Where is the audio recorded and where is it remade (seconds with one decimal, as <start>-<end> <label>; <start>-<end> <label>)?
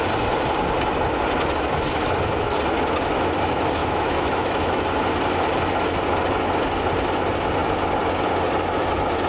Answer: 0.0-3.8 recorded; 3.8-4.8 remade; 4.8-9.3 recorded